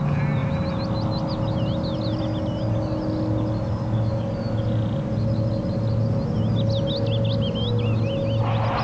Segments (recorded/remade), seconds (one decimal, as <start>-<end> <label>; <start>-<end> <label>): 0.0-8.8 recorded